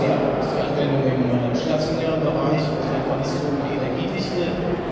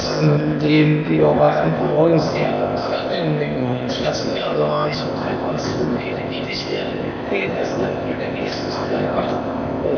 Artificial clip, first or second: second